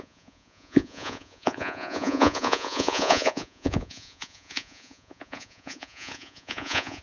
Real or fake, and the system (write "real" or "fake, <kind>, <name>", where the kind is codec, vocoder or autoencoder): fake, vocoder, Vocos